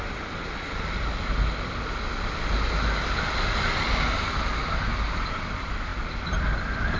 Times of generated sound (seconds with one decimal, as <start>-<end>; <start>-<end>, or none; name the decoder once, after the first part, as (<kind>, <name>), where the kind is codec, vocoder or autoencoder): none